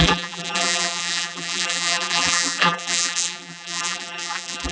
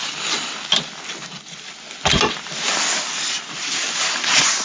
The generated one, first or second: first